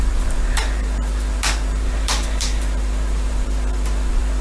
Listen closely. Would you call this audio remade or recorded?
remade